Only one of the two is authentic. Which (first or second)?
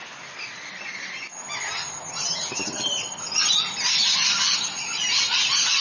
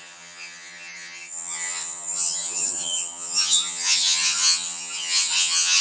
first